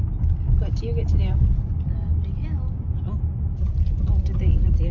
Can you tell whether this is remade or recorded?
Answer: recorded